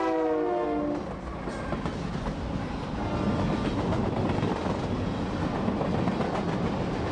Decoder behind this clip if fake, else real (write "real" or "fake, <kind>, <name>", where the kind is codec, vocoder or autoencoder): real